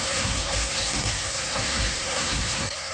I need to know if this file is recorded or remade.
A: remade